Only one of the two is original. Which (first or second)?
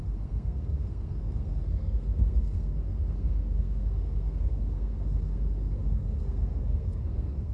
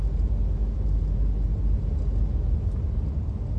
second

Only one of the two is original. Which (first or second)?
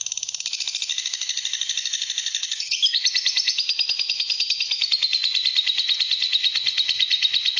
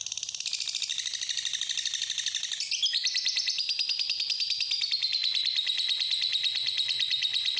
second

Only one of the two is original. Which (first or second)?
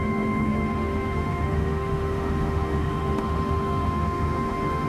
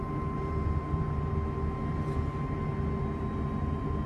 second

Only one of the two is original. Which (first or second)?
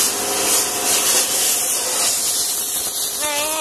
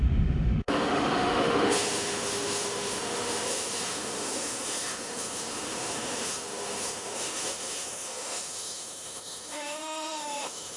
first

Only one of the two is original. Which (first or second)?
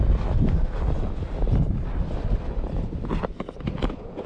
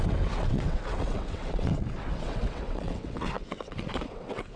first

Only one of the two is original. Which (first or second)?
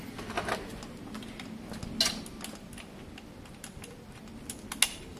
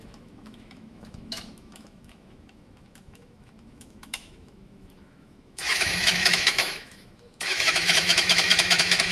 first